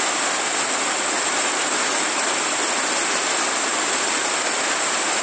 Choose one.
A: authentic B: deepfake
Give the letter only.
A